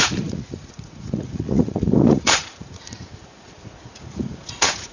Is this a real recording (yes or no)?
no